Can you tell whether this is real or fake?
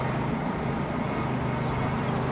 real